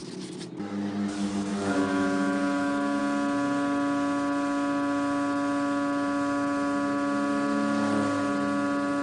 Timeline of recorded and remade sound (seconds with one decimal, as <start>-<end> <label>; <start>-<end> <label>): 0.0-1.5 recorded; 1.5-3.0 remade; 3.0-9.0 recorded